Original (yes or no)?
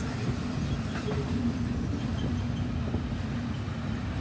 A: yes